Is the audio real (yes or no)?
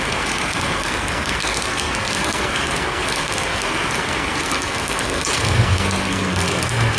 no